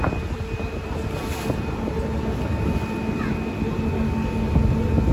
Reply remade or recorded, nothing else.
recorded